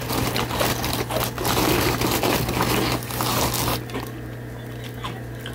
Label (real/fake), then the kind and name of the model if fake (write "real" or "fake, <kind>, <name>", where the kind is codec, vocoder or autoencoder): real